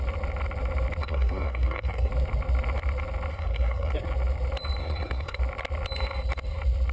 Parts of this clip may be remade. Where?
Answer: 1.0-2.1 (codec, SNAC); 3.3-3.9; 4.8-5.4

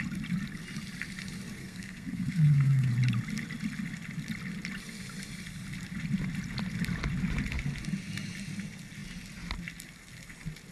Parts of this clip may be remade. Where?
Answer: 1.6-2.9 (codec, SNAC)

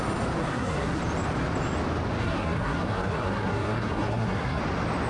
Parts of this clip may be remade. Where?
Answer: 0.4-1.0 (codec, SNAC); 2.2-4.6

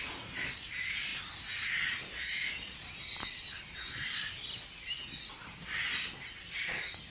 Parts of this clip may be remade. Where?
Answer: none